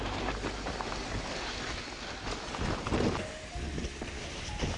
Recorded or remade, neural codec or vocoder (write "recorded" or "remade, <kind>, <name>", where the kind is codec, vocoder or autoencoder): recorded